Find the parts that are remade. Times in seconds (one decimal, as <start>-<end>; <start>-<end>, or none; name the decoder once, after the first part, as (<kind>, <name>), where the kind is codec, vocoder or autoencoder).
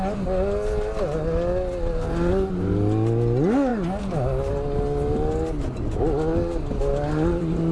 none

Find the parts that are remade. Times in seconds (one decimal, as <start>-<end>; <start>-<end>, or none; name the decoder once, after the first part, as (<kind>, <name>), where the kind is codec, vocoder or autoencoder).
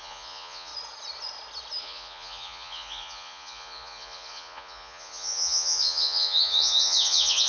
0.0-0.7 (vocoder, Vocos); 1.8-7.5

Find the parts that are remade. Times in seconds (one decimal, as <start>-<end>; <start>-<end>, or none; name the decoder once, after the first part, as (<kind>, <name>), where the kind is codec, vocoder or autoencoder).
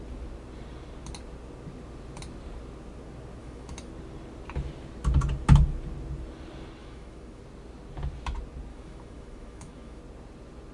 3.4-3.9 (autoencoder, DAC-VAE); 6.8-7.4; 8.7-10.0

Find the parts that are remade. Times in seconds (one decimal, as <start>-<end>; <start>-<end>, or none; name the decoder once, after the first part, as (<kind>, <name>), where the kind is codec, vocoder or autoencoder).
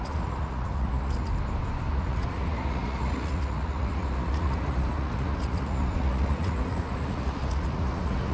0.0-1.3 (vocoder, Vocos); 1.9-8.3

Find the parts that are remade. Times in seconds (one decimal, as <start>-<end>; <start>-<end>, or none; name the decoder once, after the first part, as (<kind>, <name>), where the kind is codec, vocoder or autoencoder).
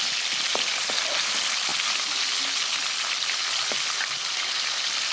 1.7-5.1 (vocoder, BigVGAN v2)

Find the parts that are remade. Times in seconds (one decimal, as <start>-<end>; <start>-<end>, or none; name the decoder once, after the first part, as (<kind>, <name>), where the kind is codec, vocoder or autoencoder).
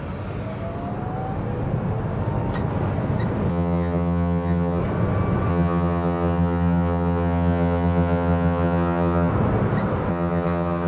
3.5-4.8 (vocoder, HiFi-GAN); 5.5-9.3; 10.1-10.9